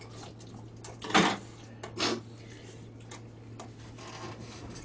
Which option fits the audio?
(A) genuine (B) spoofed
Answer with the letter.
A